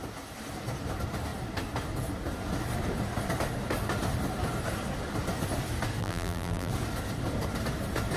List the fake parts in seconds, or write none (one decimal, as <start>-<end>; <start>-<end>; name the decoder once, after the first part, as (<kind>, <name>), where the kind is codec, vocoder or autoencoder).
6.0-6.7 (vocoder, BigVGAN v2)